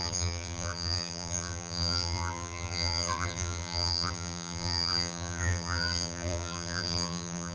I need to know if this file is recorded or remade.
remade